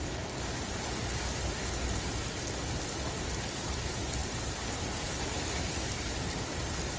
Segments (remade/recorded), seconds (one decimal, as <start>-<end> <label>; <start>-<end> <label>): 0.0-7.0 recorded